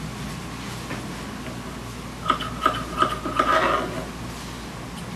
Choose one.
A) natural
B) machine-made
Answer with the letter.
A